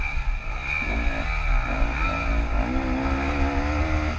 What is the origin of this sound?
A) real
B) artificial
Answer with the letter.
A